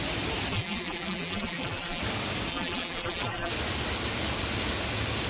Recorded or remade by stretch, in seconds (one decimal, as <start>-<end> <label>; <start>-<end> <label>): 0.0-0.5 recorded; 0.5-2.0 remade; 2.0-2.5 recorded; 2.5-3.5 remade; 3.5-5.3 recorded